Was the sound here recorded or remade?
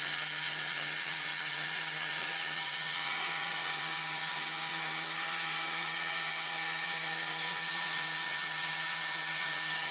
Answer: remade